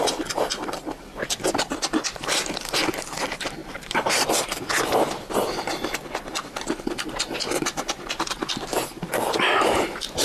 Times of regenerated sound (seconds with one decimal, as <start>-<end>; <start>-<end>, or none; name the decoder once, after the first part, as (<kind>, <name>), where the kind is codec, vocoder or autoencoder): 3.6-4.7 (vocoder, BigVGAN v2)